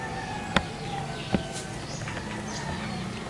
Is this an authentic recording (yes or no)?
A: yes